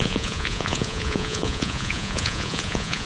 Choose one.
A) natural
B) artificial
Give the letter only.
B